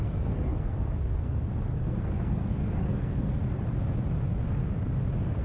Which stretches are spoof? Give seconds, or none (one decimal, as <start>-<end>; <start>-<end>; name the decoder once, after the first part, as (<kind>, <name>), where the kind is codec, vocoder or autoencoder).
0.0-3.4 (codec, SNAC)